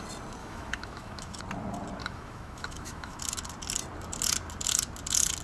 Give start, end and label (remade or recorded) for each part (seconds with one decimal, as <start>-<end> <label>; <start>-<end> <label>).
0.0-0.4 recorded; 0.4-1.4 remade; 1.4-2.0 recorded; 2.0-3.2 remade; 3.2-5.4 recorded